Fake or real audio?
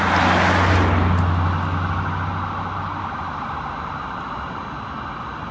real